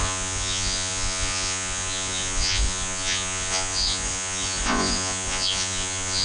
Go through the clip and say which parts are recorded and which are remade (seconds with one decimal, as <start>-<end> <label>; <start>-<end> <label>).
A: 0.0-6.2 remade